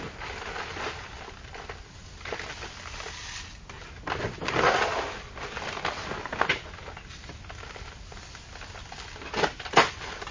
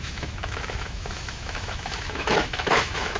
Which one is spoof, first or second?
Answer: second